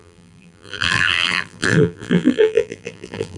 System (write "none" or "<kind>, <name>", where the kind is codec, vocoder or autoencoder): vocoder, BigVGAN v2